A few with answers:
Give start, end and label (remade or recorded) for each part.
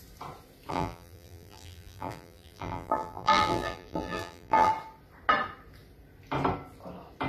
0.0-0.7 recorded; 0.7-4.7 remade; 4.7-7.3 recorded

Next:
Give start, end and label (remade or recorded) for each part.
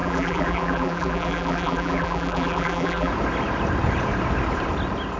0.0-3.1 remade; 3.1-5.2 recorded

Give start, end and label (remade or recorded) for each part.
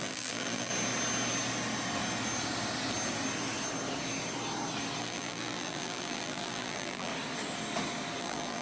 0.0-0.7 remade; 0.7-5.0 recorded; 5.0-7.1 remade; 7.1-8.2 recorded; 8.2-8.6 remade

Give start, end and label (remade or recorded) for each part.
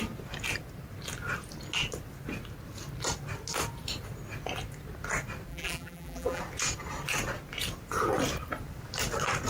0.0-5.5 recorded; 5.5-6.4 remade; 6.4-9.5 recorded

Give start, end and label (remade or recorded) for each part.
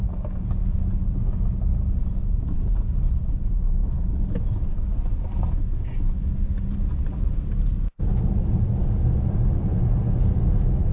0.0-10.9 recorded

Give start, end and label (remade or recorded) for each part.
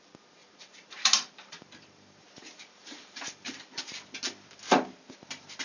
0.0-0.4 recorded; 0.4-3.8 remade; 3.8-5.6 recorded